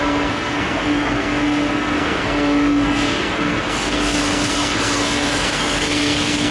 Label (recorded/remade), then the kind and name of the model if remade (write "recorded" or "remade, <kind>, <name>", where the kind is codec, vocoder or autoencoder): remade, codec, SNAC